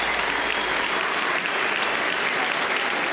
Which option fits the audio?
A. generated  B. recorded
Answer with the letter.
B